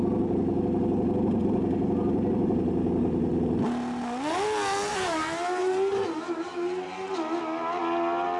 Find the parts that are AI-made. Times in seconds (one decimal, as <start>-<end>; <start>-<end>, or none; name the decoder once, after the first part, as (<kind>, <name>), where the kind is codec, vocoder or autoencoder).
1.4-2.5 (vocoder, BigVGAN v2); 4.9-7.1